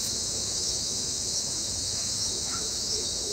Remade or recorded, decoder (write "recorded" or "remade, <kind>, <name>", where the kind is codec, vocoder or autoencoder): remade, autoencoder, DAC-VAE